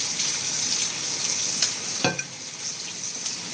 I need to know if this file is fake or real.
real